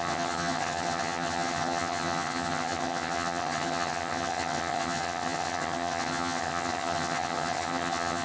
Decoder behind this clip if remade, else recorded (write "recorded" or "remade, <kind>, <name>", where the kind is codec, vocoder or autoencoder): remade, vocoder, HiFi-GAN